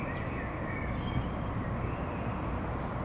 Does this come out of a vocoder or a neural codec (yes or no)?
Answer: no